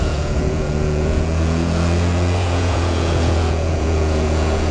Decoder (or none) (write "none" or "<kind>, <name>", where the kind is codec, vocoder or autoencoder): vocoder, Vocos